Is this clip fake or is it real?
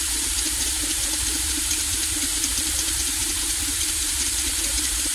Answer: fake